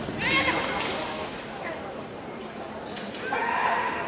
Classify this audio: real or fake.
real